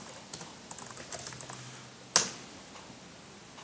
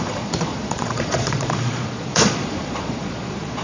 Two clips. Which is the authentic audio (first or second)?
first